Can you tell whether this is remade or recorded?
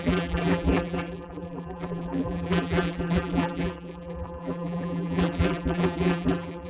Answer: remade